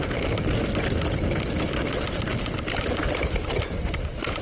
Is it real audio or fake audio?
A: real